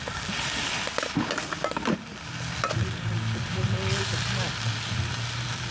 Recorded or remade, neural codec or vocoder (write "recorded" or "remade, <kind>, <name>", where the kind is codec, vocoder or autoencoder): recorded